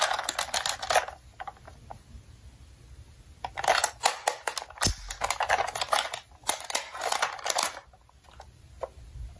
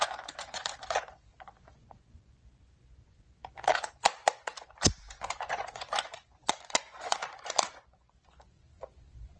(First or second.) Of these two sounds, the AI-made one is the second